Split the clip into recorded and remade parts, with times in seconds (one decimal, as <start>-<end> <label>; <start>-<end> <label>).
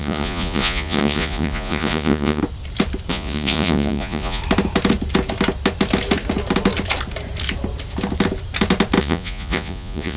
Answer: 0.0-2.4 remade; 2.4-3.1 recorded; 3.1-4.4 remade; 4.4-9.0 recorded; 9.0-10.2 remade